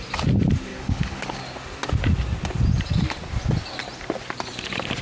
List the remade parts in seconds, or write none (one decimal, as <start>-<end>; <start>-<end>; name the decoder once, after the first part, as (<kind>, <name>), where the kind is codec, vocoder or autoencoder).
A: 0.7-1.4 (codec, DAC)